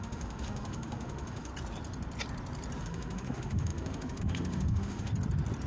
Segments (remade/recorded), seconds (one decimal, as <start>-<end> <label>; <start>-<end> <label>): 0.0-1.5 remade; 1.5-2.8 recorded; 2.8-5.1 remade; 5.1-5.7 recorded